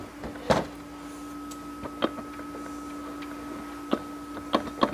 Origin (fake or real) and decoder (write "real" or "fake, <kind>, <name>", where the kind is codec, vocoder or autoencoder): real